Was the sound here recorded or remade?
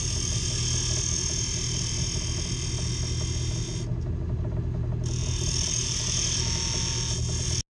recorded